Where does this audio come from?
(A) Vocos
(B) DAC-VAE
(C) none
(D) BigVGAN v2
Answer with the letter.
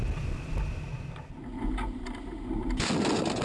C